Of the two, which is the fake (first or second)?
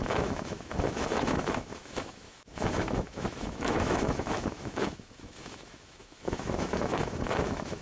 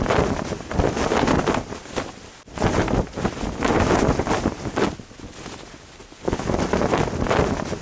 first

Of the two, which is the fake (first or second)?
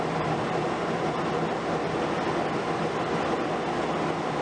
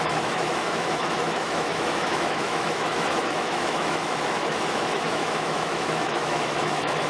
second